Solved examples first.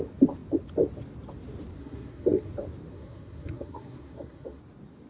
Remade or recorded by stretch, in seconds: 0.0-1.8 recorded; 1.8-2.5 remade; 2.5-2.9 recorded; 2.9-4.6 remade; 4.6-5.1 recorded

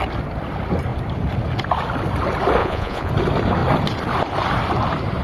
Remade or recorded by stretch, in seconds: 0.0-2.6 recorded; 2.6-3.1 remade; 3.1-5.2 recorded

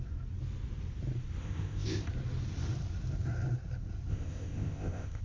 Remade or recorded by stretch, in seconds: 0.0-1.4 recorded; 1.4-2.1 remade; 2.1-4.1 recorded; 4.1-5.2 remade

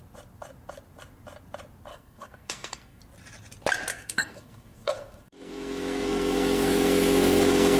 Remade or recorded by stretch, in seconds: 0.0-1.9 recorded; 1.9-3.0 remade; 3.0-3.9 recorded; 3.9-7.8 remade

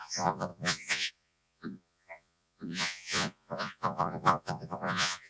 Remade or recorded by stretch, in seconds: 0.0-5.3 remade